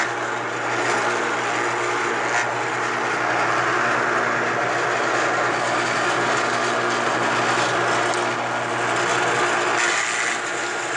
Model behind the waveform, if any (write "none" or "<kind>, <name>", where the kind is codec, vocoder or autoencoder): none